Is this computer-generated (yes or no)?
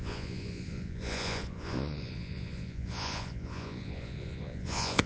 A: yes